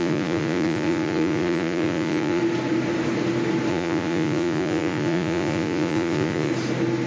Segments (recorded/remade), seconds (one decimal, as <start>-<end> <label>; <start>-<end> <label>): 0.0-2.4 remade; 2.4-3.7 recorded; 3.7-6.5 remade; 6.5-7.1 recorded